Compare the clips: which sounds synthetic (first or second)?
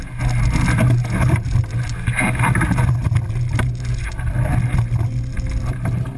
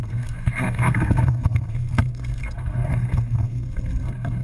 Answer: second